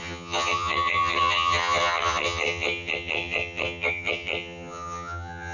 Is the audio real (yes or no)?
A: no